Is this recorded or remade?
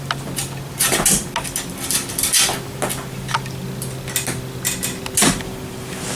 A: recorded